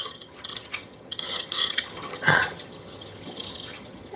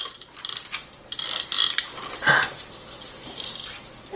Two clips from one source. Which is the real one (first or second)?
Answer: second